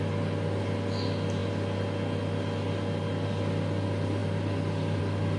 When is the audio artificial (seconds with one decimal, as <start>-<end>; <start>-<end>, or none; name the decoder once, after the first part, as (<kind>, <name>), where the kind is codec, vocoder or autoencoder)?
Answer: none